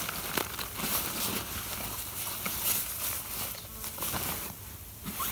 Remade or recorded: recorded